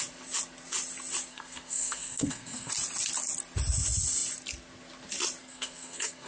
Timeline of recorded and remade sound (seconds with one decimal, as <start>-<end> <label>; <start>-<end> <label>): 0.0-1.3 recorded; 1.3-2.7 remade; 2.7-5.4 recorded; 5.4-6.3 remade

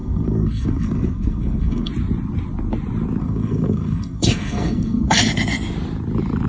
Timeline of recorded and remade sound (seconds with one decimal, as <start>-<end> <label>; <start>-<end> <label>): 0.0-1.9 remade; 1.9-3.2 recorded; 3.2-5.2 remade; 5.2-6.5 recorded

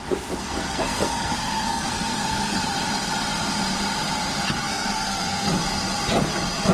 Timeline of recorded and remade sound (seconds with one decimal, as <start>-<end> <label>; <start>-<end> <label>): 0.0-0.4 recorded; 0.4-2.6 remade; 2.6-4.6 recorded; 4.6-5.5 remade; 5.5-6.7 recorded

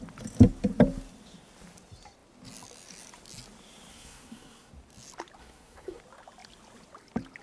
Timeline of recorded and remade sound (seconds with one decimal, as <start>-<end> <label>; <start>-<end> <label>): 0.0-3.9 recorded; 3.9-4.7 remade; 4.7-5.4 recorded; 5.4-6.0 remade; 6.0-7.4 recorded

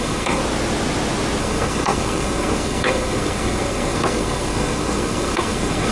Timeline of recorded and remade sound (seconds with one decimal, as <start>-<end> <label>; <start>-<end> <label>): 0.0-0.4 remade; 0.4-1.4 recorded; 1.4-5.9 remade

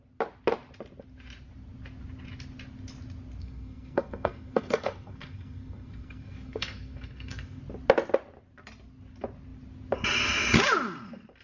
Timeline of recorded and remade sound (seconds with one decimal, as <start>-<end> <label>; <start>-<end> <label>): 0.0-3.4 recorded; 3.4-7.6 remade; 7.6-11.4 recorded